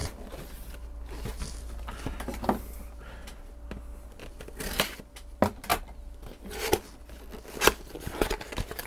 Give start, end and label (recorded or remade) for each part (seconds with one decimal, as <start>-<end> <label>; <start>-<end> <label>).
0.0-8.9 recorded